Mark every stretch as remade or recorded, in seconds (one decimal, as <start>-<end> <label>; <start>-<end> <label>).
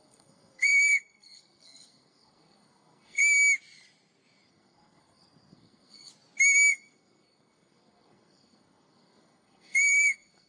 0.0-3.2 remade; 3.2-4.5 recorded; 4.5-6.1 remade; 6.1-6.7 recorded; 6.7-10.5 remade